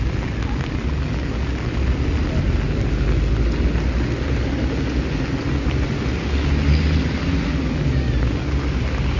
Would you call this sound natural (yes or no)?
yes